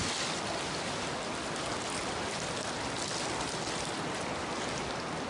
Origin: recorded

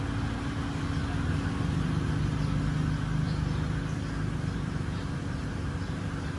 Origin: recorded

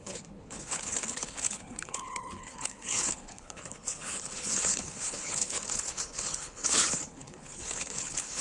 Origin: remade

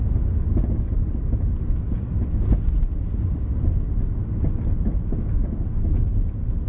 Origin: recorded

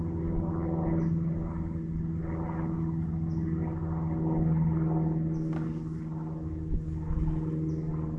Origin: recorded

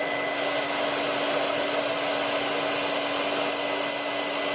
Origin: recorded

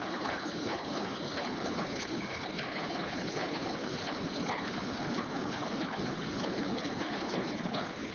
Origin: remade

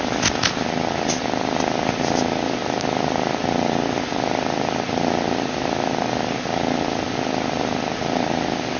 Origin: recorded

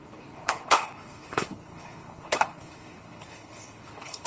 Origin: remade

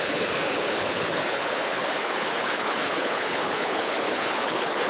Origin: remade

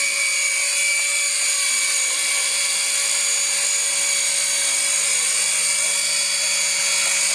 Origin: recorded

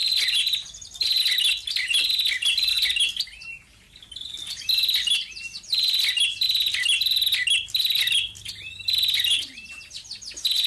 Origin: recorded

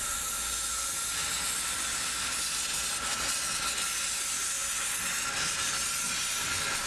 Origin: recorded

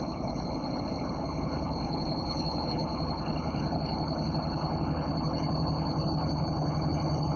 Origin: remade